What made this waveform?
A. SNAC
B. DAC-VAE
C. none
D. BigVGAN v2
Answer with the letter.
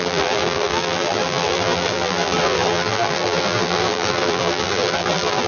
D